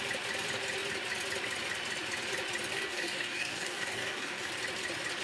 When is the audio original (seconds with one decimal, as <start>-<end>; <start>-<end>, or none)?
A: 0.0-2.7; 4.5-5.2